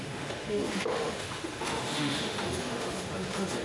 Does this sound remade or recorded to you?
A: remade